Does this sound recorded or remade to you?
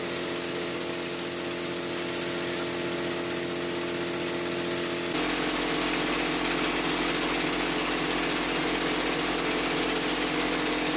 recorded